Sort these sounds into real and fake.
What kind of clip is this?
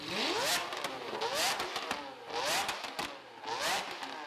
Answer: real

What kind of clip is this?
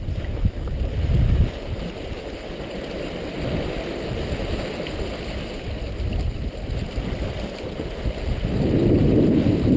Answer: real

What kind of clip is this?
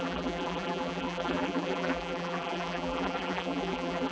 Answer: fake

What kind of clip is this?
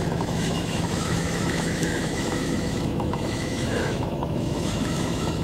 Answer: fake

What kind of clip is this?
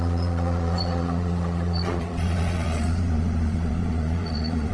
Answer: fake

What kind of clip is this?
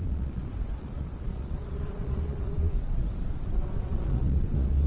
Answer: fake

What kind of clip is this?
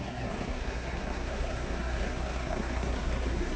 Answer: fake